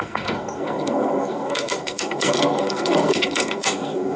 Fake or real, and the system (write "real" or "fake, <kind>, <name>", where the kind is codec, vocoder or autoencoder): fake, codec, SNAC